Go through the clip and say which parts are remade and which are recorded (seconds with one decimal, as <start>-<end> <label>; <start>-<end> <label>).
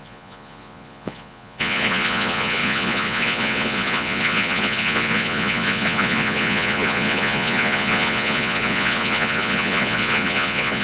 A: 0.0-10.8 remade